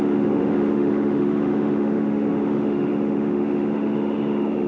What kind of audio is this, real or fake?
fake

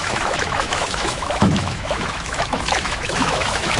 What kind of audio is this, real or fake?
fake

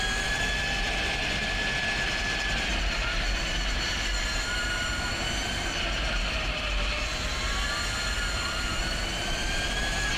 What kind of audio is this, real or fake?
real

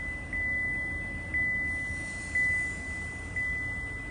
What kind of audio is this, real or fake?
real